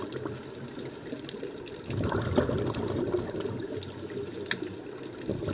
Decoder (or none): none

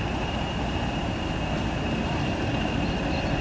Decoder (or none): none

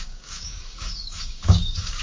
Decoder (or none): codec, DAC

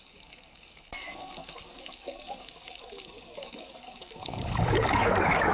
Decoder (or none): codec, DAC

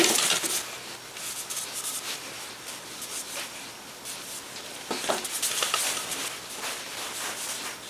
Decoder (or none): none